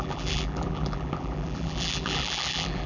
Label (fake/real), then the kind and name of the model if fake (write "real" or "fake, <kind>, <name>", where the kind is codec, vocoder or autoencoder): fake, vocoder, BigVGAN v2